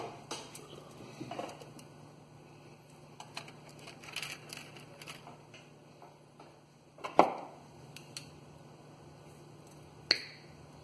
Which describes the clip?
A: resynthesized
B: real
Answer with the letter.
B